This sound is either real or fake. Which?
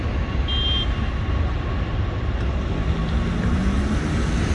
real